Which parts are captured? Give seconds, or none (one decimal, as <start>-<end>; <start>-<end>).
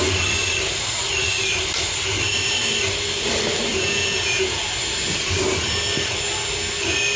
0.0-3.7; 4.6-7.2